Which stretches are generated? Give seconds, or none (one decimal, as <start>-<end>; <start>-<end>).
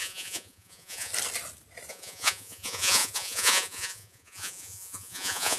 0.0-1.1; 1.9-5.6